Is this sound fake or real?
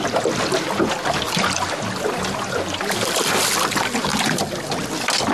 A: real